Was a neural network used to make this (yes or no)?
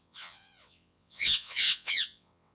yes